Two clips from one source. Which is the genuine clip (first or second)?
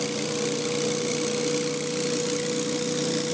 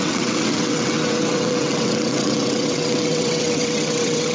first